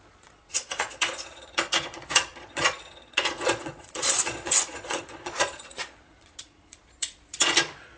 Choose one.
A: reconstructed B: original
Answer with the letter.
A